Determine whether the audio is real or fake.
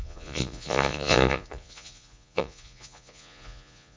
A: fake